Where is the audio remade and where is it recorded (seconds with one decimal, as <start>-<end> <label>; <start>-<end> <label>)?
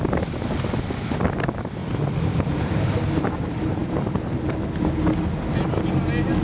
0.0-6.4 recorded